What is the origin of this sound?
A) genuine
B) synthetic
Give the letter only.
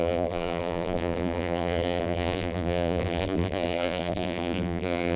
B